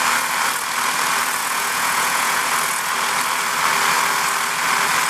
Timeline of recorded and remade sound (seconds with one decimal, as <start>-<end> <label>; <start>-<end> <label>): 0.0-1.4 recorded; 1.4-2.4 remade; 2.4-5.1 recorded